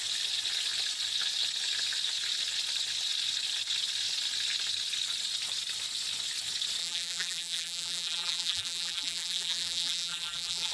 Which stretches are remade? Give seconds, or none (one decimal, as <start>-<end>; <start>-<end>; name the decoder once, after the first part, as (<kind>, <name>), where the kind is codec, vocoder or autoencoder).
6.8-10.7 (vocoder, BigVGAN v2)